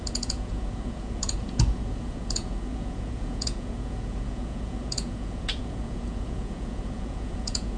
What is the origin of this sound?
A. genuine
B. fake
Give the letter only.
B